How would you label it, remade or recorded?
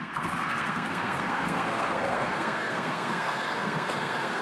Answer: remade